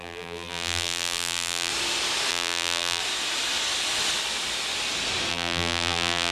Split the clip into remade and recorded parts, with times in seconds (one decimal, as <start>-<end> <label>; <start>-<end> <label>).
0.0-1.7 remade; 1.7-2.3 recorded; 2.3-3.0 remade; 3.0-5.3 recorded; 5.3-6.3 remade